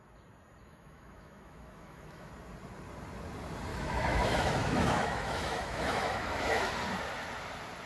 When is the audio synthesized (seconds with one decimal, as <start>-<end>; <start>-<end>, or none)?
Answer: 0.6-2.3; 3.7-6.7